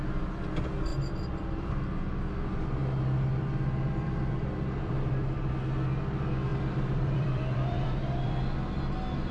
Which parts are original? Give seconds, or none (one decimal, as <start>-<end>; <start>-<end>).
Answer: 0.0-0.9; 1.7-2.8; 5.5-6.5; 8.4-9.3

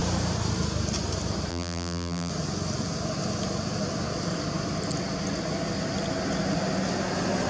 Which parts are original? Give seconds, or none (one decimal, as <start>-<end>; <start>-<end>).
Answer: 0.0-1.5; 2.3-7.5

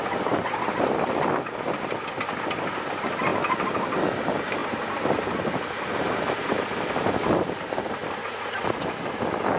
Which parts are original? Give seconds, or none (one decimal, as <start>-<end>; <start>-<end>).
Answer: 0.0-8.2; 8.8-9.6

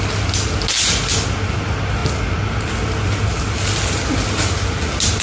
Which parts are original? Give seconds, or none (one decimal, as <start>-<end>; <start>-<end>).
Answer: 0.0-5.2

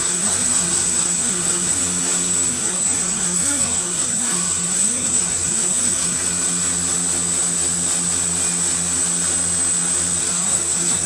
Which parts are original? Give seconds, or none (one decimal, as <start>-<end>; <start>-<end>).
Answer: 1.8-2.5; 6.3-10.2